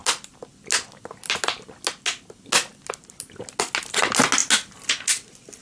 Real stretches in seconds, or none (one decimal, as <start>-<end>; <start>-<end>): 0.0-5.6